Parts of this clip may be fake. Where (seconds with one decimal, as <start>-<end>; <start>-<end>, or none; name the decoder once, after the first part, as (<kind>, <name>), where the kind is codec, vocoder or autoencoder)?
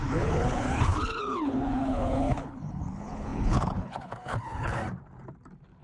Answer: 0.0-4.8 (codec, HILCodec)